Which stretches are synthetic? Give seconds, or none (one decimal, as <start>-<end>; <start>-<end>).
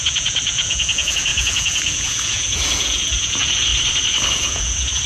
0.0-3.7; 4.3-5.1